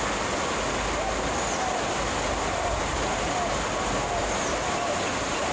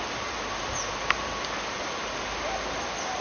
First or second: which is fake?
second